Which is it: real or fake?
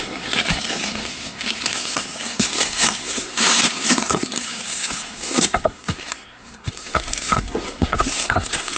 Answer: fake